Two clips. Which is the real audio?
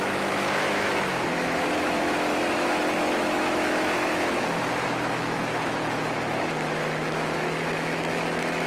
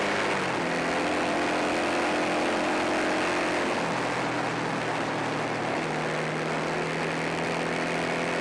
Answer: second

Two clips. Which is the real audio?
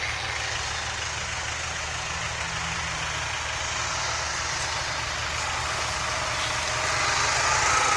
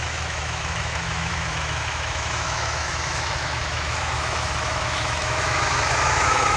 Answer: first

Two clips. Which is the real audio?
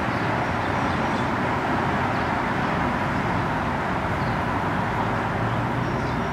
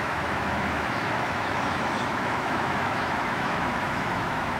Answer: first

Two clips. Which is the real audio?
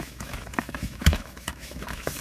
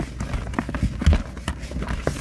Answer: second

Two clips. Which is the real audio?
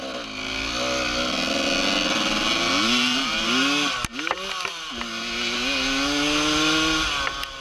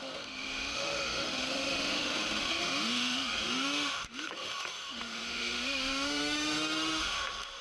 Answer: first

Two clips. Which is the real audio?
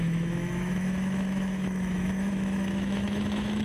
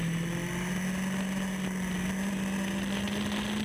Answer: second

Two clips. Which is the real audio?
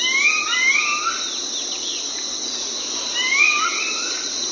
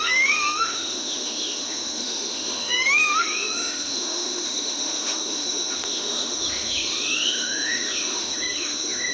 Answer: first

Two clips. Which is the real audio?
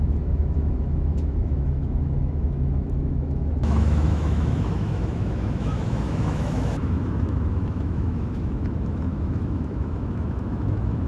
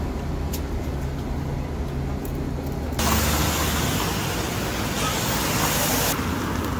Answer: second